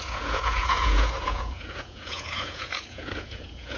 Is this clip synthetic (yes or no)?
yes